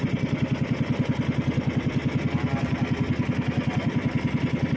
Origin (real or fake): real